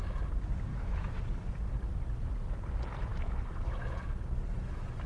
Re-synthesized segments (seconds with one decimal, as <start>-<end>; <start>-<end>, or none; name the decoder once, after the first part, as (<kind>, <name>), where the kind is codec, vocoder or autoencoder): 0.7-1.2 (autoencoder, DAC-VAE)